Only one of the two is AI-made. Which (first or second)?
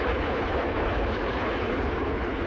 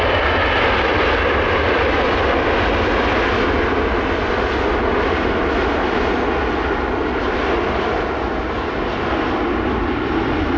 first